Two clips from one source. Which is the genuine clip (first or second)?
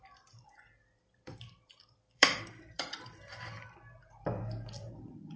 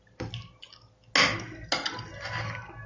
second